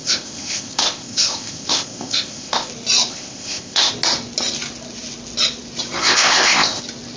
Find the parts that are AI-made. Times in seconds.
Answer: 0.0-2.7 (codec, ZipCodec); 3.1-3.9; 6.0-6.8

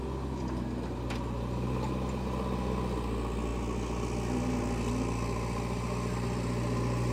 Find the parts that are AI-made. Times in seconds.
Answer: none